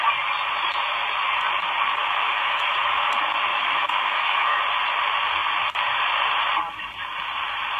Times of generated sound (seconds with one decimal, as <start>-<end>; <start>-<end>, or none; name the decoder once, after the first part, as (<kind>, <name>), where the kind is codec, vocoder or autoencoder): 2.0-3.1 (autoencoder, DAC-VAE); 3.5-4.6